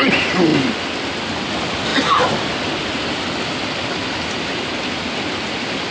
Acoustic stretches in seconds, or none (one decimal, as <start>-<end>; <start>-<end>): 0.0-5.9